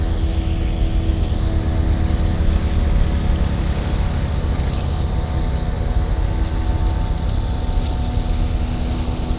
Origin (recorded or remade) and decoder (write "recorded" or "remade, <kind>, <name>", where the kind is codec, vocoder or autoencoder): recorded